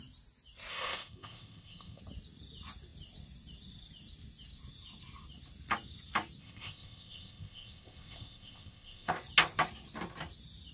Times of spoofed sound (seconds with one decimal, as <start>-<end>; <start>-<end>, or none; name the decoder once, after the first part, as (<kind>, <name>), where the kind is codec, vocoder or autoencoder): 0.7-2.0 (codec, ZipCodec); 6.4-9.1